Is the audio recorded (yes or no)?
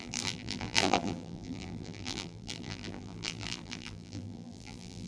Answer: no